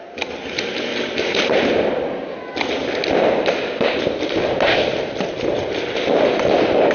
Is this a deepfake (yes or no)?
no